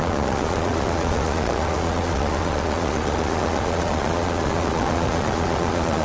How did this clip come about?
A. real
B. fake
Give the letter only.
B